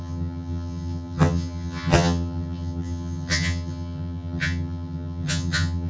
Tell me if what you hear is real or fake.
fake